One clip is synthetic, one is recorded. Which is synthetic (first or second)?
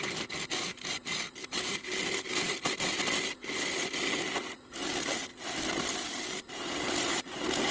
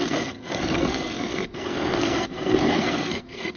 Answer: second